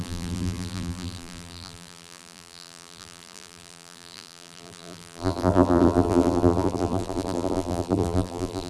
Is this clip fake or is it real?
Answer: fake